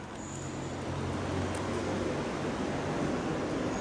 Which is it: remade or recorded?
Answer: recorded